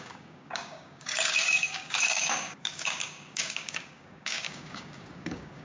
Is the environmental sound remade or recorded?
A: remade